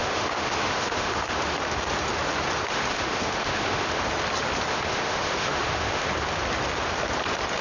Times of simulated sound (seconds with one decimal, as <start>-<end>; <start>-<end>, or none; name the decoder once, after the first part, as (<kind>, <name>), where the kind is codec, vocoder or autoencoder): 0.0-1.4 (autoencoder, DAC-VAE); 2.7-4.0; 4.7-6.1